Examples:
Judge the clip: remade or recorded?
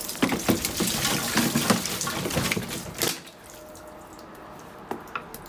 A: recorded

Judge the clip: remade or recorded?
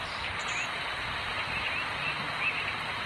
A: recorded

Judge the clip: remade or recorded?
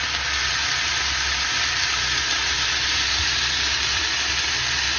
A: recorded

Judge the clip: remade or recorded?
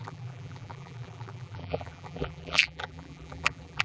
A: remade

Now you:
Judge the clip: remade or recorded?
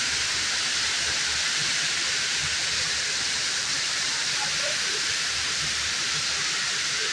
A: remade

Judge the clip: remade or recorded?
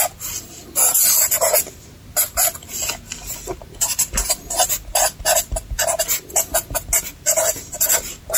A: recorded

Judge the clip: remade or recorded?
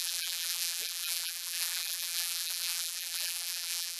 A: remade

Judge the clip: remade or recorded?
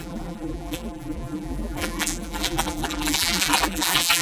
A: remade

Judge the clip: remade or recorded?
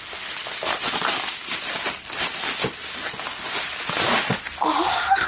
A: recorded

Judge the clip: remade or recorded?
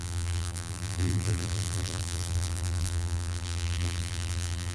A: remade